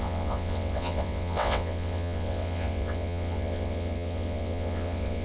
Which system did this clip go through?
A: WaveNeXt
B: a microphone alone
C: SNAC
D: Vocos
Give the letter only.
A